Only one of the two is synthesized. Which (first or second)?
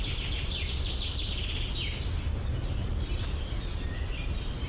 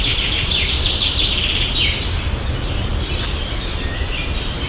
second